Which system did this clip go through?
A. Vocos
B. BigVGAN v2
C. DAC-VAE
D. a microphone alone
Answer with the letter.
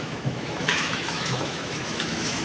C